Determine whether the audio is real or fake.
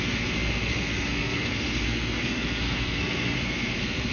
fake